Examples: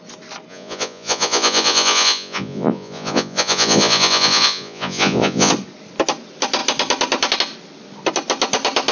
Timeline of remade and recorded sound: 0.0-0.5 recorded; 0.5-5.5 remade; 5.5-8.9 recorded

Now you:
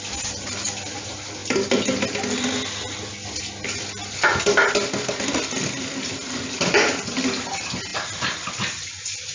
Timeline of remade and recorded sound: 0.0-9.3 recorded

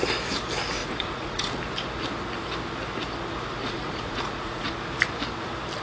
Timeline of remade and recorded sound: 0.0-0.8 recorded; 0.8-1.6 remade; 1.6-3.6 recorded; 3.6-4.7 remade; 4.7-5.8 recorded

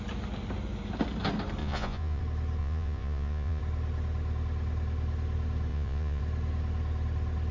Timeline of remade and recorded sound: 0.0-1.6 recorded; 1.6-2.2 remade; 2.2-2.6 recorded; 2.6-3.6 remade; 3.6-5.7 recorded; 5.7-6.2 remade; 6.2-7.5 recorded

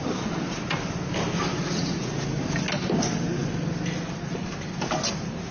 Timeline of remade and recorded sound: 0.0-1.5 recorded; 1.5-2.4 remade; 2.4-5.5 recorded

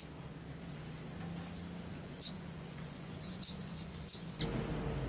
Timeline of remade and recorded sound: 0.0-1.9 recorded; 1.9-4.4 remade; 4.4-5.1 recorded

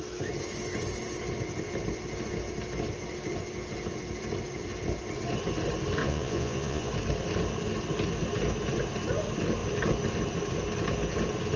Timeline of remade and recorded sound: 0.0-6.0 recorded; 6.0-6.9 remade; 6.9-11.6 recorded

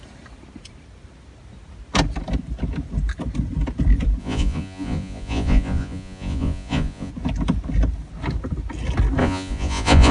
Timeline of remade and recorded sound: 0.0-4.2 recorded; 4.2-7.1 remade; 7.1-9.2 recorded; 9.2-10.1 remade